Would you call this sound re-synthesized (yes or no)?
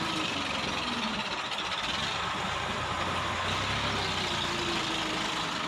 no